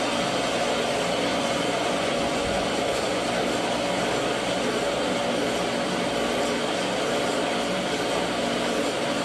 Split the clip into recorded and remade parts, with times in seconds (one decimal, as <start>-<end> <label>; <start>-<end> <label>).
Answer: 0.0-1.3 recorded; 1.3-3.2 remade; 3.2-9.2 recorded